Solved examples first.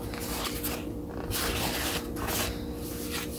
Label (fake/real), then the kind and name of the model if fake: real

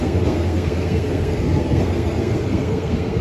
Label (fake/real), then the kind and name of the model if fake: fake, codec, SNAC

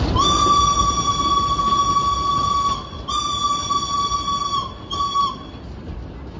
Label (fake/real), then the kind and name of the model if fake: real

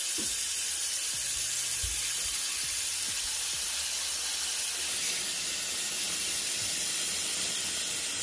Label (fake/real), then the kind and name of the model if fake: real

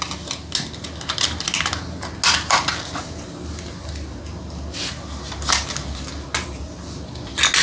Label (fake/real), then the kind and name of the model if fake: real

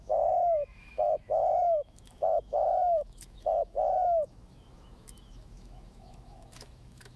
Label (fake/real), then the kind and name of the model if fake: fake, autoencoder, DAC-VAE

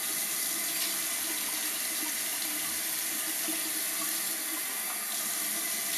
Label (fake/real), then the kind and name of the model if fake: real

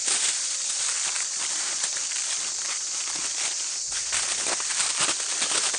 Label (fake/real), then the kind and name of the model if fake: fake, vocoder, BigVGAN v2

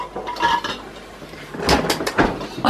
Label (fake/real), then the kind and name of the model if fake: real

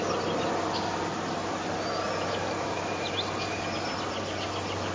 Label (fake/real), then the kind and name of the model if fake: real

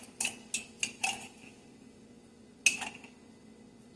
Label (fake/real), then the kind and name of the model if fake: real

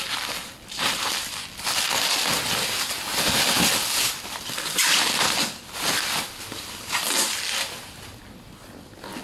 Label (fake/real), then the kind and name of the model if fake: real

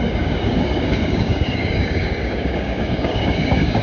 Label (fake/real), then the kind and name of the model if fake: fake, codec, DAC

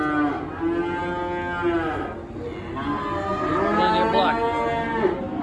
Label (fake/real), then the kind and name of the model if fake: real